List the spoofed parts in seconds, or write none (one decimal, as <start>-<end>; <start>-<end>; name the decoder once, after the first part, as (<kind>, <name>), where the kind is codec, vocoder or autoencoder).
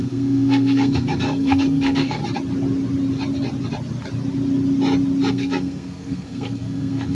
0.0-2.2 (codec, SNAC); 5.3-7.1